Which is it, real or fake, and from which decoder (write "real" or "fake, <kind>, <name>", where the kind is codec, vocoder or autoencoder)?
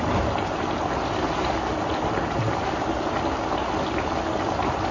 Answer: real